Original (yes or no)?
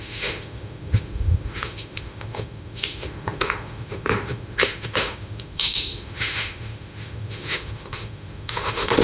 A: no